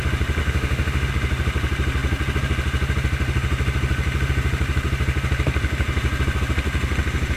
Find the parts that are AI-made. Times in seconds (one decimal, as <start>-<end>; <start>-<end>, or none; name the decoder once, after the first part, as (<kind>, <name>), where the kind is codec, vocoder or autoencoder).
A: 0.4-1.1 (autoencoder, DAC-VAE)